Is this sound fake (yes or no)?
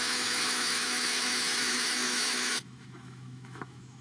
yes